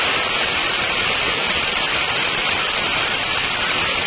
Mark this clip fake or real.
real